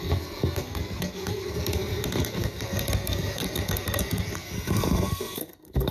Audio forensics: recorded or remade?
remade